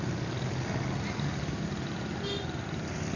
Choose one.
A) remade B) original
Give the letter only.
B